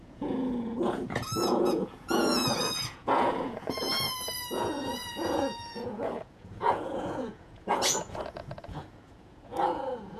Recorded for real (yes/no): no